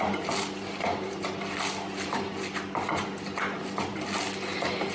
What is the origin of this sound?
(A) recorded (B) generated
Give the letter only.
A